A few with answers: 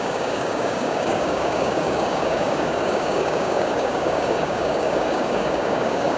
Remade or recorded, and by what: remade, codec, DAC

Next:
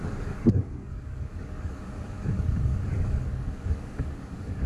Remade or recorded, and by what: remade, codec, DAC